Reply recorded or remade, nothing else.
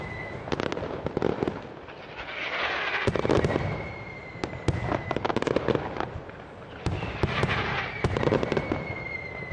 recorded